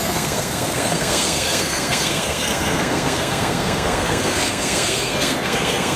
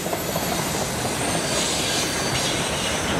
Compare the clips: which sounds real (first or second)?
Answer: second